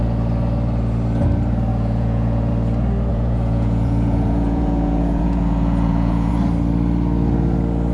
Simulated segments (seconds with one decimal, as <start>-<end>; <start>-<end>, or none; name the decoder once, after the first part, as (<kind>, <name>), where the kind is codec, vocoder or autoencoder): 1.7-2.5 (vocoder, Vocos); 3.1-6.3